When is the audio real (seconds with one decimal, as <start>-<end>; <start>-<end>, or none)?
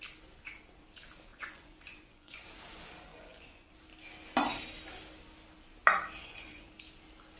0.0-1.3; 2.4-3.1; 3.7-6.2; 6.7-7.4